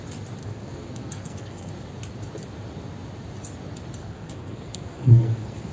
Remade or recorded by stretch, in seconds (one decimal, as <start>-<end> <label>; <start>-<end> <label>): 0.0-0.4 recorded; 0.4-1.7 remade; 1.7-4.0 recorded; 4.0-5.7 remade